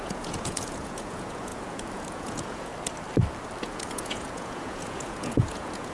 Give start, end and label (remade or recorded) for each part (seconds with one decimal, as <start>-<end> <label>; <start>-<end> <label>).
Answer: 0.0-2.7 remade; 2.7-3.6 recorded; 3.6-5.9 remade